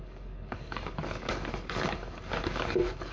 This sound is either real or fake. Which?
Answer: fake